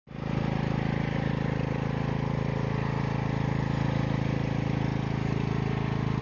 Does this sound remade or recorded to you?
recorded